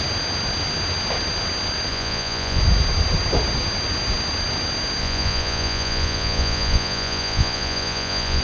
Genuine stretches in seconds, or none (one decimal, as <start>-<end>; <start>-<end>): 0.0-1.9; 2.6-5.0